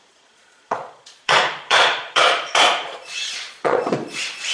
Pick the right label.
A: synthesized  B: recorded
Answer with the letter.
A